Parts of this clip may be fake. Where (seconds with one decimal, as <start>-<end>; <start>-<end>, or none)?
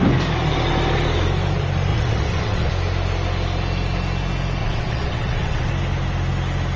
1.9-2.7; 4.6-5.7